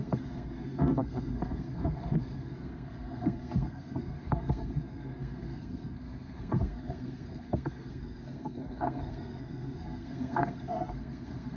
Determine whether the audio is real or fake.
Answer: fake